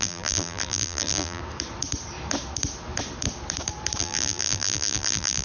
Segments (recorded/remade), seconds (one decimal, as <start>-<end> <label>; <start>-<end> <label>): 0.0-1.4 remade; 1.4-4.0 recorded; 4.0-5.4 remade